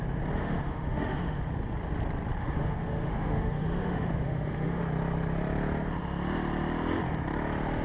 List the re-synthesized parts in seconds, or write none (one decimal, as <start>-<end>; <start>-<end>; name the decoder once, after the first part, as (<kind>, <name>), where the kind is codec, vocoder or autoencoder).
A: 0.4-1.4 (autoencoder, DAC-VAE); 2.4-4.8